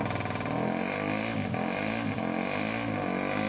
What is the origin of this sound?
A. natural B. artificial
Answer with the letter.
A